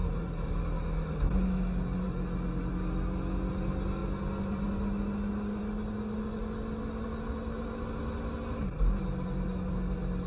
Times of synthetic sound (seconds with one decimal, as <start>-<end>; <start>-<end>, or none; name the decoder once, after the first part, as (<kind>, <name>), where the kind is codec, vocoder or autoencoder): 0.0-0.6 (vocoder, BigVGAN v2)